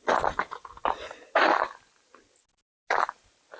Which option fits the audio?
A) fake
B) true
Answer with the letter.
B